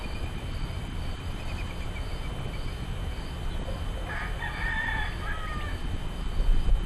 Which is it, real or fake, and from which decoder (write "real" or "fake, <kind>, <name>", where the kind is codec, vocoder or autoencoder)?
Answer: real